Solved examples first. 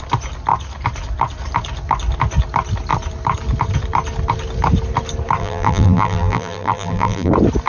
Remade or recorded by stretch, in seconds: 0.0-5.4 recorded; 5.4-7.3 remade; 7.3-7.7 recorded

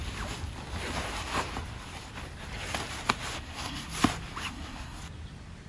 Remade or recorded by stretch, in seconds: 0.0-3.4 recorded; 3.4-3.9 remade; 3.9-4.5 recorded; 4.5-5.0 remade; 5.0-5.7 recorded

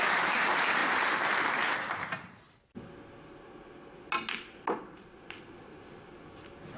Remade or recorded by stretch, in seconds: 0.0-6.8 recorded

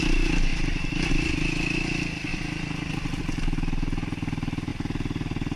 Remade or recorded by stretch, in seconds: 0.0-0.5 recorded; 0.5-1.1 remade; 1.1-2.3 recorded; 2.3-3.2 remade; 3.2-5.6 recorded

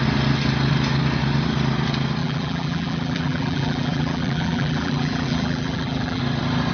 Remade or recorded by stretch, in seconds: 0.0-2.2 recorded; 2.2-6.2 remade; 6.2-6.7 recorded